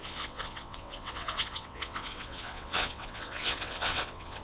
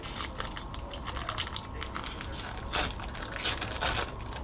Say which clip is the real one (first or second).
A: second